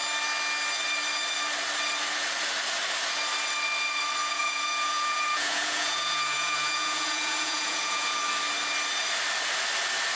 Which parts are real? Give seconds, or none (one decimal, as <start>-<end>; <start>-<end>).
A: 0.0-4.2; 8.2-10.2